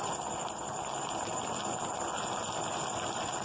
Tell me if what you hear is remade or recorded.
recorded